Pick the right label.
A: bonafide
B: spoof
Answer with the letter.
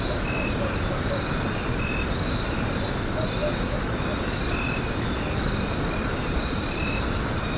A